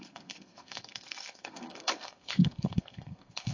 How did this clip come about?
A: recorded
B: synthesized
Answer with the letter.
B